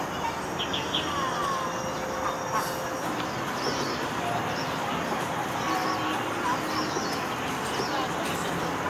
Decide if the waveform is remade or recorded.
recorded